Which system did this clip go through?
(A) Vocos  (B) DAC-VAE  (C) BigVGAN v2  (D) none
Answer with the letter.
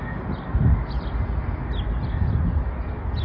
D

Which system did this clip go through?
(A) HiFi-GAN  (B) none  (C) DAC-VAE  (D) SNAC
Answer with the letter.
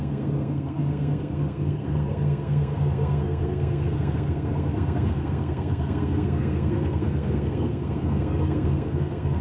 D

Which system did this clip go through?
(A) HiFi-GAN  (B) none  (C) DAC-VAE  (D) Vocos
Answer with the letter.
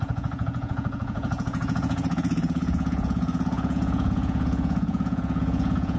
D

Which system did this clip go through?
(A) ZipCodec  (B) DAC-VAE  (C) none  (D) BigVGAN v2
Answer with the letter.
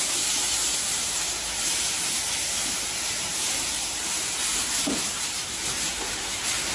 D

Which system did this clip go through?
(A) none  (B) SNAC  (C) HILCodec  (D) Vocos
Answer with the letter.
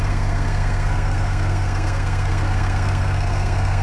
B